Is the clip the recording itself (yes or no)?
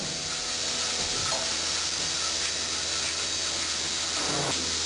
yes